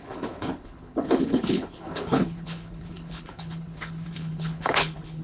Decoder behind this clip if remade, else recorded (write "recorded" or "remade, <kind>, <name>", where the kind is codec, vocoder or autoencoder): remade, codec, HILCodec